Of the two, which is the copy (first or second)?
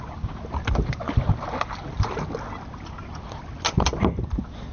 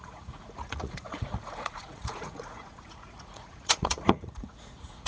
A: second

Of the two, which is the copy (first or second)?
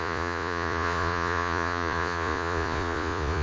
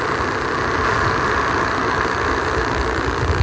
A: first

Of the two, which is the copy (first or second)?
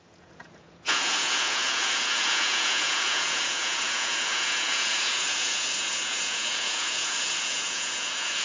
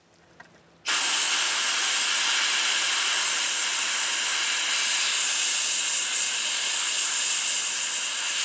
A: first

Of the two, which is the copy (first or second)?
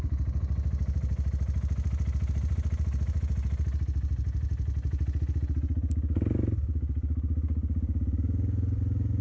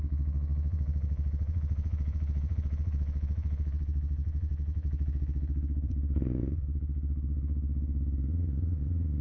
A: second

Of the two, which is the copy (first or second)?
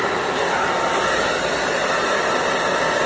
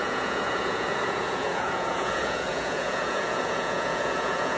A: second